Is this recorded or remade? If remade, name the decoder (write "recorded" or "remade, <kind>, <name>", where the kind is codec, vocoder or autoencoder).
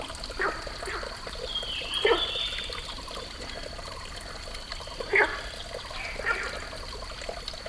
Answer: recorded